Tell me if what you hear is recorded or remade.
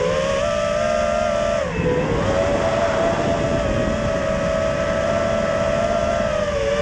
recorded